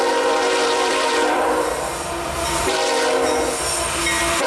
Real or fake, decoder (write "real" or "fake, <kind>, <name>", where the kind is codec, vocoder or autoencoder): fake, vocoder, BigVGAN v2